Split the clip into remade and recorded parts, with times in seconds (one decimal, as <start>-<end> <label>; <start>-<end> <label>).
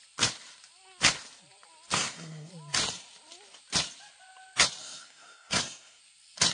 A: 0.0-1.9 recorded; 1.9-2.5 remade; 2.5-4.8 recorded; 4.8-6.0 remade; 6.0-6.5 recorded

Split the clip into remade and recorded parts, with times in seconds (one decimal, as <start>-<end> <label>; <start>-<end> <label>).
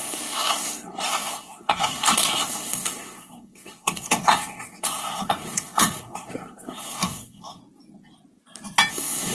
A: 0.0-7.6 remade; 7.6-8.9 recorded; 8.9-9.3 remade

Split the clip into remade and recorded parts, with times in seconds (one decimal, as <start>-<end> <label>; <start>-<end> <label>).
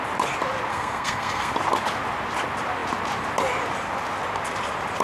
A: 0.0-0.7 recorded; 0.7-1.5 remade; 1.5-5.0 recorded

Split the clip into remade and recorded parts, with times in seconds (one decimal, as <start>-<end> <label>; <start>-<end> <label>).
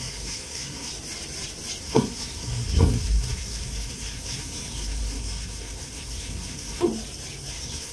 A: 0.0-0.9 remade; 0.9-1.8 recorded; 1.8-6.9 remade; 6.9-7.5 recorded; 7.5-7.9 remade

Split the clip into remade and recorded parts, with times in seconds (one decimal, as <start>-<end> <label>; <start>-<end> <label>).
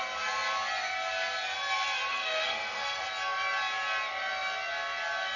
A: 0.0-2.1 recorded; 2.1-3.1 remade; 3.1-5.4 recorded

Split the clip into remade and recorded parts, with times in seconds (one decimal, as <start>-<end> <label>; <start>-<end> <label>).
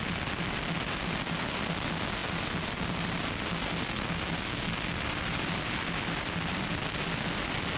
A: 0.0-7.8 recorded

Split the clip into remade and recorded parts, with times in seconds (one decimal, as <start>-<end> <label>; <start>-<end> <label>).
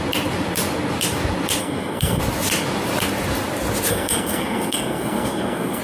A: 0.0-1.6 recorded; 1.6-2.2 remade; 2.2-3.9 recorded; 3.9-5.8 remade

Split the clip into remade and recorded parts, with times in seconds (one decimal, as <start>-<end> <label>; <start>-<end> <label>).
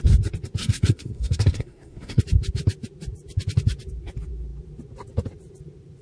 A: 0.0-0.6 recorded; 0.6-2.2 remade; 2.2-6.0 recorded